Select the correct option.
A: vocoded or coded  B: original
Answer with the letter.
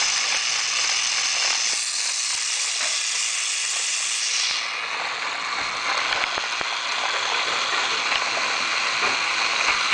B